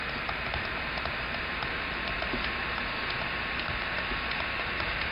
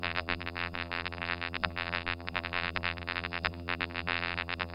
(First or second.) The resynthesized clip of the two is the second